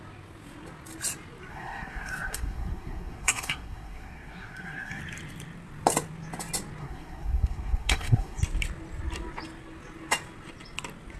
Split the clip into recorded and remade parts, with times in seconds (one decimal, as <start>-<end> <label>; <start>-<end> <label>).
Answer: 0.0-1.5 recorded; 1.5-5.0 remade; 5.0-6.8 recorded; 6.8-8.4 remade; 8.4-11.2 recorded